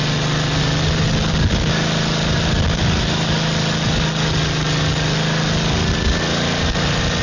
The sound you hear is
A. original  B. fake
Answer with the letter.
A